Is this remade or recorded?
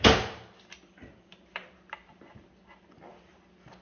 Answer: recorded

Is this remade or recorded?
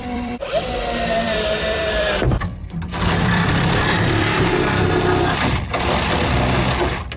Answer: remade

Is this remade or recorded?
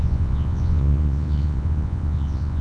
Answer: remade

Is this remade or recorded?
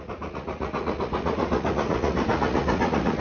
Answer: remade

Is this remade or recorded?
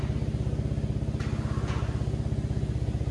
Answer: recorded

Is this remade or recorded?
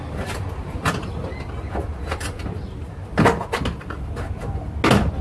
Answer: recorded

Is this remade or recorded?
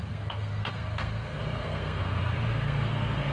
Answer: remade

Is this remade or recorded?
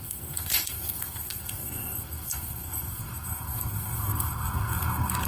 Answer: remade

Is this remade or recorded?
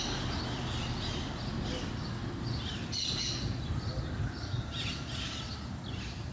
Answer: recorded